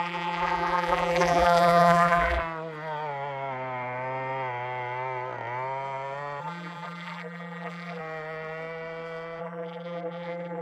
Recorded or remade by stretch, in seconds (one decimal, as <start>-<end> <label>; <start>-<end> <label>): 0.0-2.4 remade; 2.4-6.4 recorded; 6.4-8.0 remade; 8.0-9.4 recorded; 9.4-10.6 remade